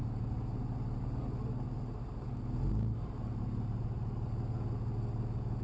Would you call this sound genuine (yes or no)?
yes